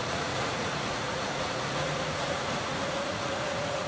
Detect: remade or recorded remade